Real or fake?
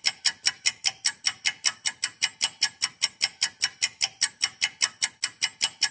real